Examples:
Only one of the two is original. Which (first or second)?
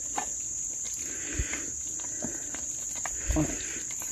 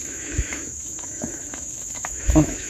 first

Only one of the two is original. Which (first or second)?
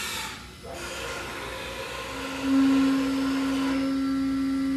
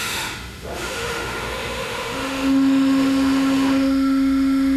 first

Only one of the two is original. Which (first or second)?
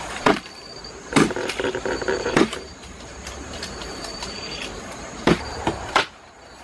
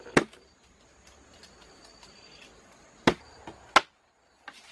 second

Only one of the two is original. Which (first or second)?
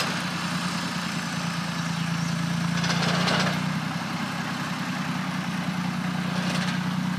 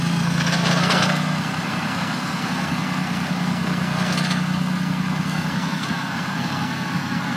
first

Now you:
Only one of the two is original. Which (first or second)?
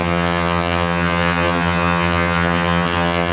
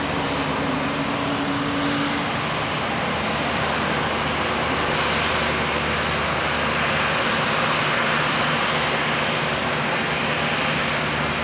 second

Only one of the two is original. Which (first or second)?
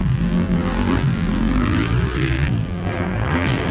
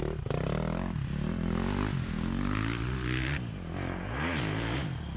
second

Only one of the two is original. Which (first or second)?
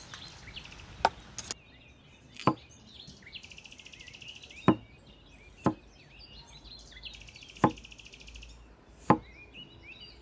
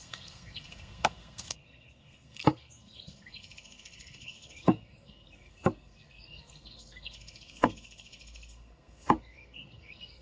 first